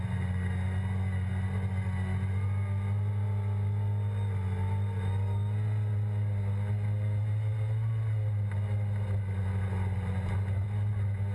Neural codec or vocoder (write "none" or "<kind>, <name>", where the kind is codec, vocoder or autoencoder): none